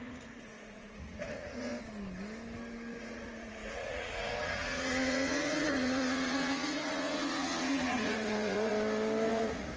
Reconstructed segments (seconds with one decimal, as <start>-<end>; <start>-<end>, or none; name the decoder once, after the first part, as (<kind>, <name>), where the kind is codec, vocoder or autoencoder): 0.0-1.7 (vocoder, Vocos); 3.0-8.7; 9.3-9.8